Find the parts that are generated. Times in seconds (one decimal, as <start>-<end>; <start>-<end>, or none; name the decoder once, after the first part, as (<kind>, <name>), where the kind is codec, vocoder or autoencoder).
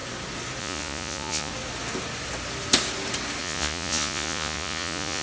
0.6-1.5 (vocoder, Vocos); 3.4-5.2